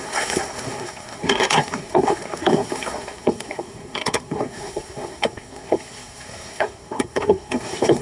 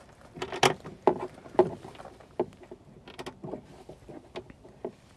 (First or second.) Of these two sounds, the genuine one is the second